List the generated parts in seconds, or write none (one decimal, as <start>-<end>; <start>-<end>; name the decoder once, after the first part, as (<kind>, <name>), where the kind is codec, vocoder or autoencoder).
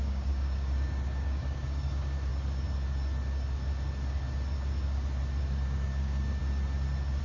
0.0-2.3 (codec, DAC); 5.4-6.4